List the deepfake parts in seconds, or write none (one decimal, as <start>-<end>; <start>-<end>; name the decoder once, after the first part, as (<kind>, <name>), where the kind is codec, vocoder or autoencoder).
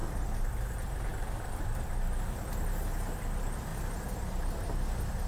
0.0-0.7 (vocoder, BigVGAN v2); 1.1-1.9